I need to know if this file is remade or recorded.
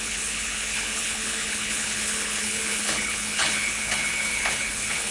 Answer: remade